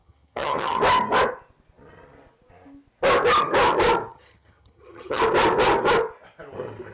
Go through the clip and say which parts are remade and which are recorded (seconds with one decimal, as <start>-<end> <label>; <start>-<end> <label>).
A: 0.0-0.8 remade; 0.8-4.1 recorded; 4.1-5.2 remade; 5.2-6.9 recorded